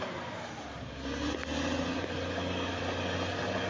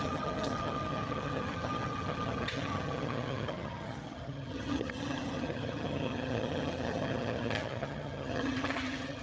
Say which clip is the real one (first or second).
first